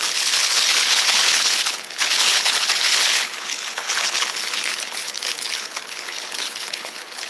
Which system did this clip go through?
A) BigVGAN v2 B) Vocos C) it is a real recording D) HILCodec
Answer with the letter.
D